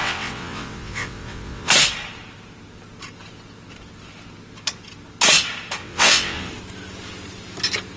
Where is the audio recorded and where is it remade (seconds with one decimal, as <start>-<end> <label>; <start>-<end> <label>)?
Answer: 0.0-1.7 remade; 1.7-5.8 recorded; 5.8-6.5 remade; 6.5-8.0 recorded